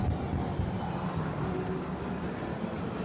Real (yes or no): yes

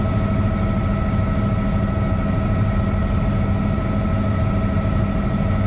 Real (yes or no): yes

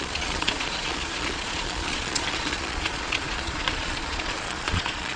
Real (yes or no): no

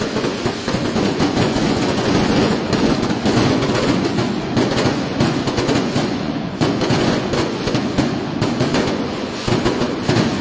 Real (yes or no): no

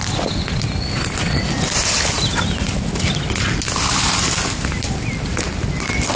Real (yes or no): yes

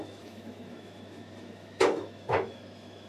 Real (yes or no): no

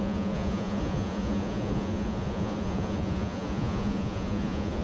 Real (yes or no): no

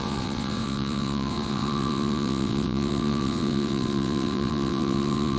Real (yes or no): no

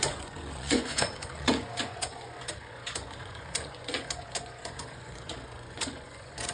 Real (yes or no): no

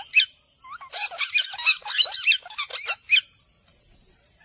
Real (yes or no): yes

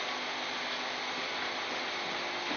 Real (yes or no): yes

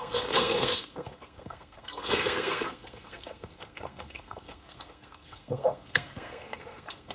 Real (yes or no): no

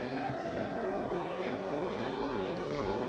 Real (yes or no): no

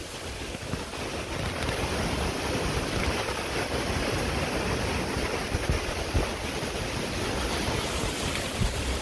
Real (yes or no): yes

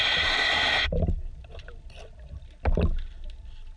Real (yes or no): yes